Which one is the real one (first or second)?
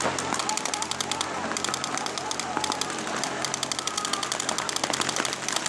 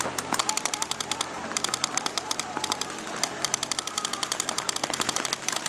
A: first